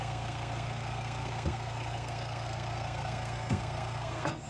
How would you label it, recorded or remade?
remade